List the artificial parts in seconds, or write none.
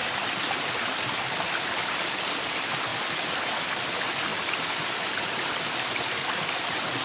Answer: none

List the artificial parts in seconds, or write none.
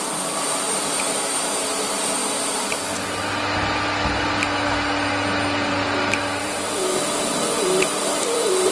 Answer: 0.0-2.2; 6.4-8.7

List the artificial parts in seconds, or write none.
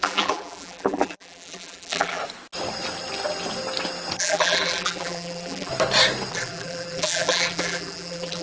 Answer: 0.0-2.2; 4.2-5.7; 6.3-8.4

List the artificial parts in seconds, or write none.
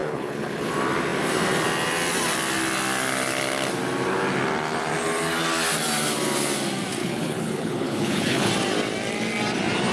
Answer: 0.0-0.7; 7.0-8.5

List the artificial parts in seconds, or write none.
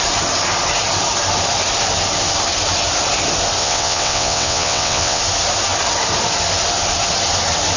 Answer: 3.6-5.2